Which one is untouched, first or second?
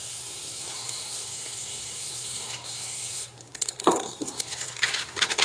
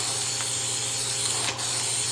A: second